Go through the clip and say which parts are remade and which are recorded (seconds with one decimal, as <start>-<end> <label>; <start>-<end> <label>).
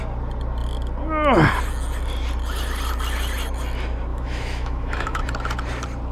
0.0-4.1 recorded; 4.1-5.2 remade; 5.2-6.1 recorded